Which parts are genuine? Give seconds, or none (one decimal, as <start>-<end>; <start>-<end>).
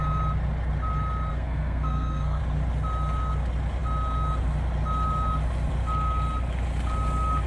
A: 0.0-1.3; 2.4-7.5